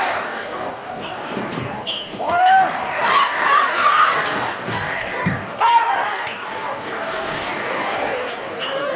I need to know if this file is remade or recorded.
remade